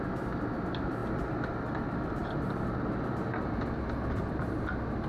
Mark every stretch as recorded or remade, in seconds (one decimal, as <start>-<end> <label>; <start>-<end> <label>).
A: 0.0-5.1 recorded